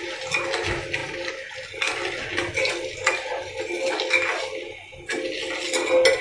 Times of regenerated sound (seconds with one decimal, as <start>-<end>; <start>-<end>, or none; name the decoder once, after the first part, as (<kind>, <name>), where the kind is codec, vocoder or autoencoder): none